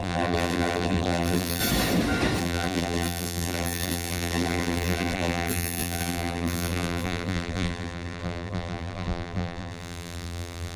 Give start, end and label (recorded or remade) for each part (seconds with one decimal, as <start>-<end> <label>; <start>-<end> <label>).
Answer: 0.0-1.6 remade; 1.6-2.4 recorded; 2.4-10.8 remade